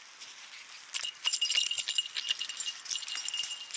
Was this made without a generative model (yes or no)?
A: yes